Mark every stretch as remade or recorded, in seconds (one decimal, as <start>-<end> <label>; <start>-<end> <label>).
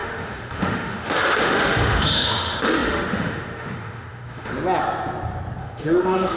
0.0-4.5 remade; 4.5-5.6 recorded; 5.6-6.4 remade